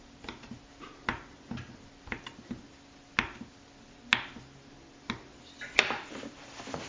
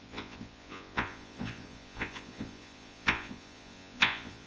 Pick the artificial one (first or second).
second